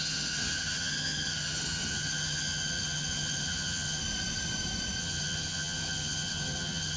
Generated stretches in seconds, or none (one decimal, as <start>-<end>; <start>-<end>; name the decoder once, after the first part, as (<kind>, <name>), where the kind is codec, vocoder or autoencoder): 0.0-4.0 (vocoder, HiFi-GAN); 5.0-7.0